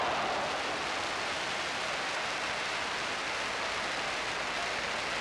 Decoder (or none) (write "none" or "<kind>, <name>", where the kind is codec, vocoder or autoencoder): none